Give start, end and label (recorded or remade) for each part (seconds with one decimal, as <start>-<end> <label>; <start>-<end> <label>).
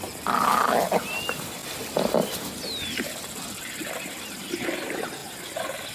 0.0-5.9 recorded